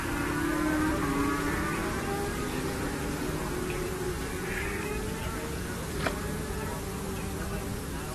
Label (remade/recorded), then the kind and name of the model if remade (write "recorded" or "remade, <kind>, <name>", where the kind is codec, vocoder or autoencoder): recorded